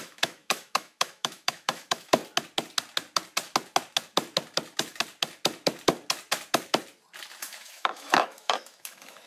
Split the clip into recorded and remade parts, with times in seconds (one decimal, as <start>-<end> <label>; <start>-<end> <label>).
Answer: 0.0-2.2 remade; 2.2-7.4 recorded; 7.4-9.3 remade

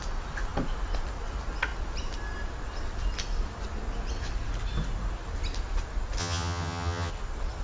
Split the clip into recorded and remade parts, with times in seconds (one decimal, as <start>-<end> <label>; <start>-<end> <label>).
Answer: 0.0-6.2 recorded; 6.2-7.1 remade; 7.1-7.6 recorded